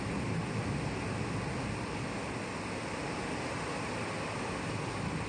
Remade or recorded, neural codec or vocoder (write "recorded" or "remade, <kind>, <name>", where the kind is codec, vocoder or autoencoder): recorded